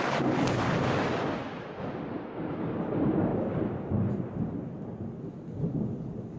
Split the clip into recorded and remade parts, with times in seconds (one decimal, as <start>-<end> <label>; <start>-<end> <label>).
0.0-6.4 recorded